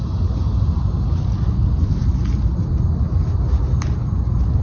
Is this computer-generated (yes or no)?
no